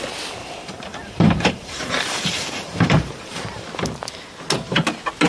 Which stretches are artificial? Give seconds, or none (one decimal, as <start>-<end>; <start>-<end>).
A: 0.4-3.6